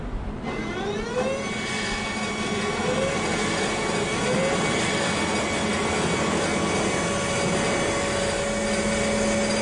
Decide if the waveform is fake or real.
real